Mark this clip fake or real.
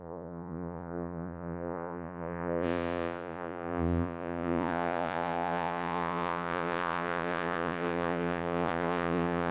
fake